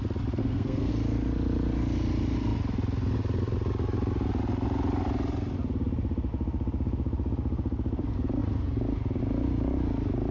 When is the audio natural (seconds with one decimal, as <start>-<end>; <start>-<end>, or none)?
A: 0.0-0.4; 0.9-10.3